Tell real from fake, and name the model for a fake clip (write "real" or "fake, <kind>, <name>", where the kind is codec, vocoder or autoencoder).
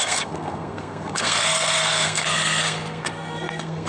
fake, codec, SNAC